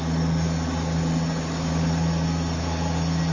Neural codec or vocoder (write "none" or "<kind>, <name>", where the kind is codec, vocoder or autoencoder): none